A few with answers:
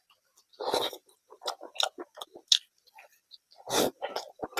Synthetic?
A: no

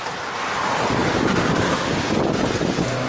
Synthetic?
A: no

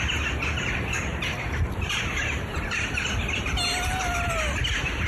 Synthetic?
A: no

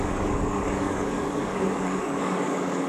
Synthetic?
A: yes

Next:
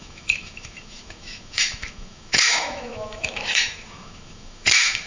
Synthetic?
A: yes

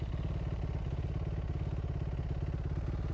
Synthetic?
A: no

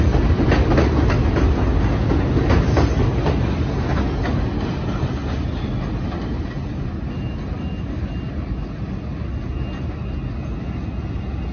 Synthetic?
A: no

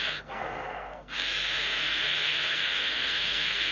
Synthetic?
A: yes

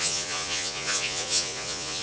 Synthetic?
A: yes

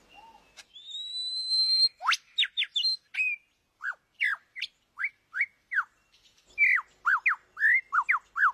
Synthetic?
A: no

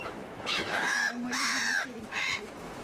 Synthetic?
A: yes